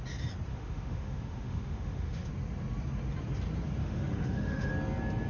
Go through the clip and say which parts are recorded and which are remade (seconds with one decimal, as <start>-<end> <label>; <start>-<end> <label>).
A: 0.0-0.5 recorded; 0.5-2.3 remade; 2.3-3.8 recorded; 3.8-4.7 remade; 4.7-5.3 recorded

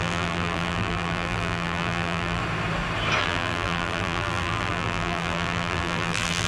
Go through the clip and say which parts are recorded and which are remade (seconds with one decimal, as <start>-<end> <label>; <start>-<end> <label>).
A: 0.0-2.4 remade; 2.4-3.2 recorded; 3.2-6.5 remade

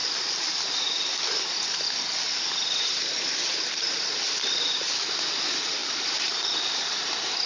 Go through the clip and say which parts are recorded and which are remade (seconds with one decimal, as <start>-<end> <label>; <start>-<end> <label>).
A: 0.0-3.0 recorded; 3.0-7.5 remade

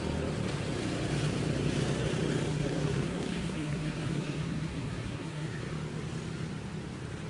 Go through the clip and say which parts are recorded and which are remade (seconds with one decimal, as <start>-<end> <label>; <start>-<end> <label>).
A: 0.0-2.5 recorded; 2.5-5.6 remade; 5.6-7.3 recorded

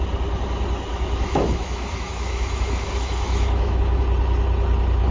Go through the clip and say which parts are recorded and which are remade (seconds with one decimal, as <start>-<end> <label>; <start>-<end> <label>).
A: 0.0-0.9 recorded; 0.9-4.0 remade; 4.0-5.1 recorded

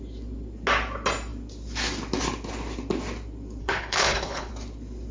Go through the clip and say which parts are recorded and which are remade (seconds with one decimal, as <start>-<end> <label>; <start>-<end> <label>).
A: 0.0-3.6 recorded; 3.6-4.5 remade; 4.5-5.1 recorded